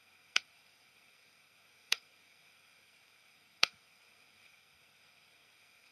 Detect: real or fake fake